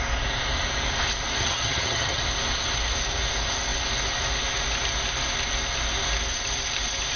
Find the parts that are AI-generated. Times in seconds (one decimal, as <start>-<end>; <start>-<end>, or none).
1.4-2.2